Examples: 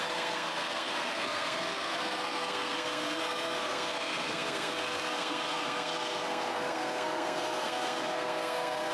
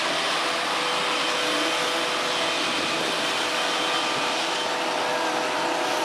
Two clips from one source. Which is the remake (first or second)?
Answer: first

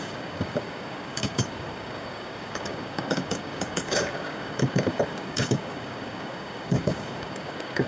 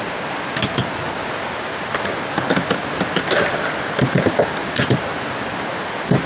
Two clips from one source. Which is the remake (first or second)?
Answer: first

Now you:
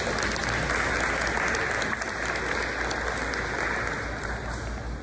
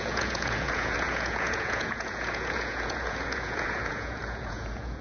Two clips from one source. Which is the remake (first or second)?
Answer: second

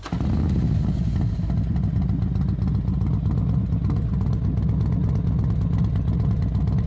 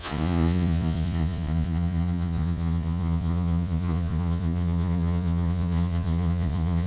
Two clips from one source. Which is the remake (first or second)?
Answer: second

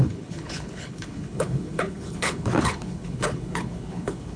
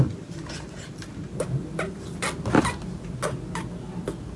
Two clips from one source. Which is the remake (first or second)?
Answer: first